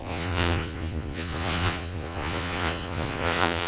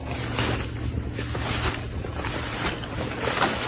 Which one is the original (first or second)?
second